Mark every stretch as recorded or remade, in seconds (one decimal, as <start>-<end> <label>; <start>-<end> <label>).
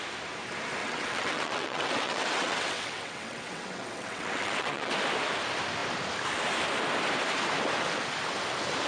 0.0-0.8 recorded; 0.8-4.9 remade; 4.9-8.9 recorded